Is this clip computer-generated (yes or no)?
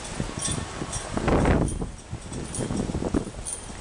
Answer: no